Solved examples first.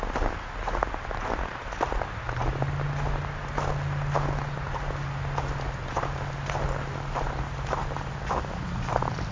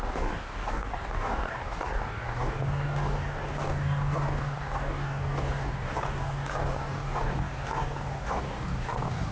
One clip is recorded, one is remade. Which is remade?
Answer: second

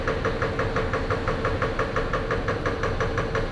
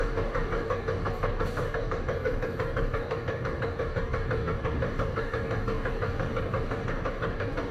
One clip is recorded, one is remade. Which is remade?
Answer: second